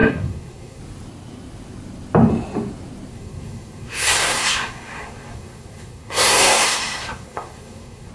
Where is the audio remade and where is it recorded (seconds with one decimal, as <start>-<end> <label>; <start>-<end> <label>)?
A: 0.0-0.8 remade; 0.8-3.1 recorded; 3.1-8.1 remade